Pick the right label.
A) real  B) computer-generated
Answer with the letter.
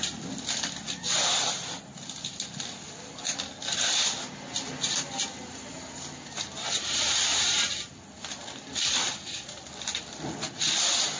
A